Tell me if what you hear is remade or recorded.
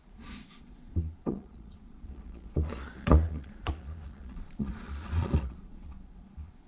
remade